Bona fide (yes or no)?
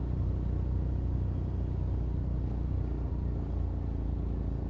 no